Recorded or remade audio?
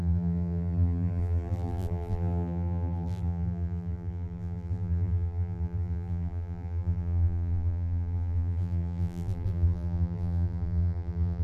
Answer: remade